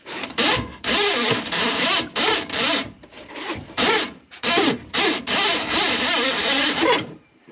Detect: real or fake fake